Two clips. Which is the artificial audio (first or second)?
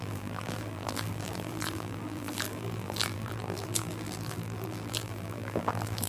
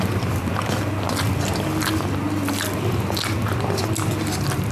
first